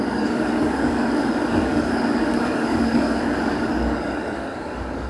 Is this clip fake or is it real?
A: fake